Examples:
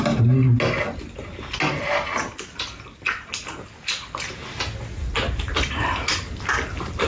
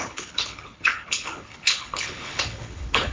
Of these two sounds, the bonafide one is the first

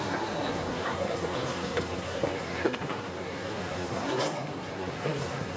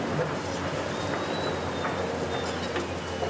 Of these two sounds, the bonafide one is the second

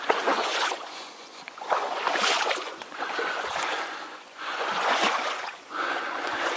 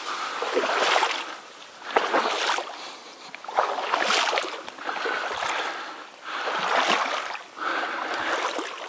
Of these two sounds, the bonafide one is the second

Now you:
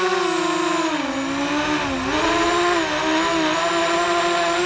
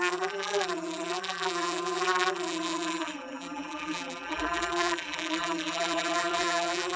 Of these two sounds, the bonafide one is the first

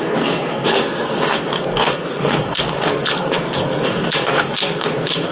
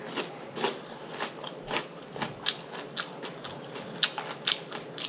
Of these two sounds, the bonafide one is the second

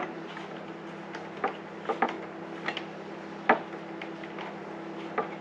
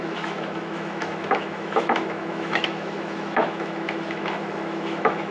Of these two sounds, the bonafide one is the first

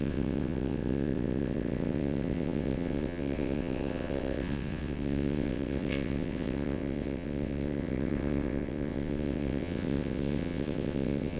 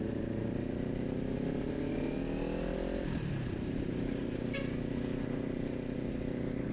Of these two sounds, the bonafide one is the second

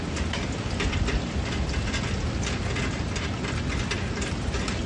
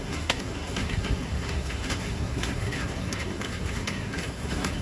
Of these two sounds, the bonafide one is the first